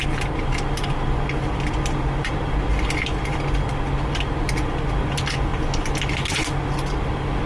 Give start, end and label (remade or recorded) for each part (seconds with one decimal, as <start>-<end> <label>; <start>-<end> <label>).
0.0-7.5 recorded